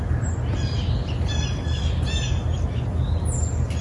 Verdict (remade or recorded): recorded